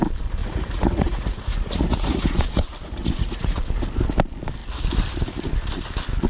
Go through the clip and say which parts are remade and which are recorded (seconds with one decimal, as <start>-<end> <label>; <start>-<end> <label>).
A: 0.0-0.4 recorded; 0.4-3.6 remade; 3.6-6.3 recorded